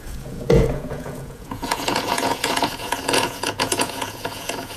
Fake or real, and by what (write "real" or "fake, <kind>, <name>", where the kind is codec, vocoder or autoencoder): fake, vocoder, Vocos